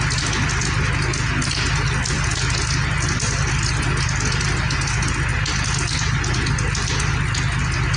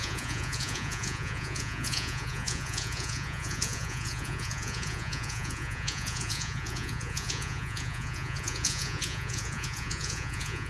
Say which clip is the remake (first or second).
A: second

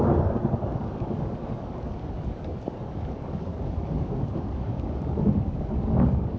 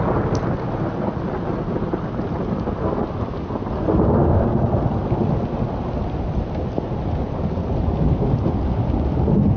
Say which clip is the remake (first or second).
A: first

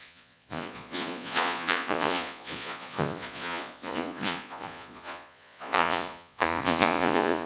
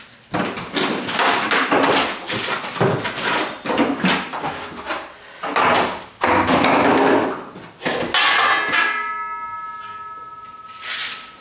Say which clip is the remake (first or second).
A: first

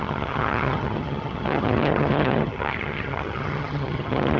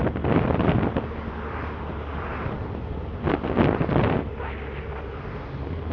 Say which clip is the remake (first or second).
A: first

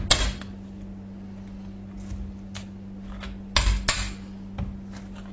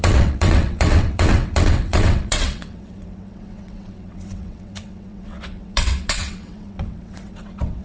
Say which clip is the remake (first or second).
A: second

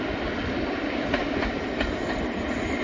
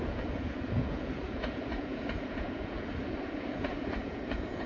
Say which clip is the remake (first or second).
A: second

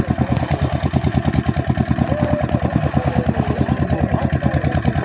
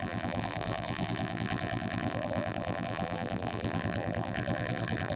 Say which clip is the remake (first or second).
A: second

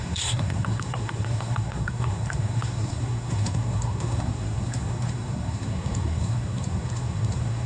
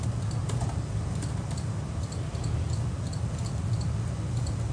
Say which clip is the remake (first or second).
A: first